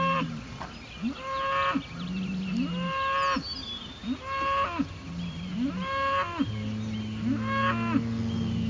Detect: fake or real real